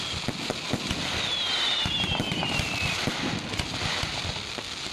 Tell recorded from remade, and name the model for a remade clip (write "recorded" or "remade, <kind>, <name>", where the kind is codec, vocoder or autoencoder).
remade, vocoder, BigVGAN v2